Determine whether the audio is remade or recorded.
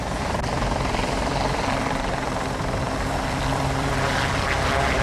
remade